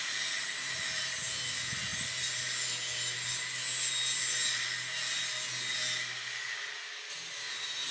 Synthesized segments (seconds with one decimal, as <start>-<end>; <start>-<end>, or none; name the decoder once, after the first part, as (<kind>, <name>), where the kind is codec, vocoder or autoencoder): none